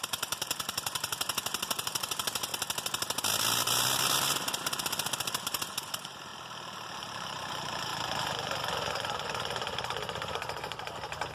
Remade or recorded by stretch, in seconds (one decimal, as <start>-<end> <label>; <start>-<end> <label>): 0.0-2.5 remade; 2.5-5.4 recorded; 5.4-6.3 remade; 6.3-6.9 recorded; 6.9-7.9 remade; 7.9-11.3 recorded